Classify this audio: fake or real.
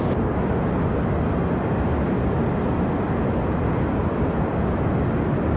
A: real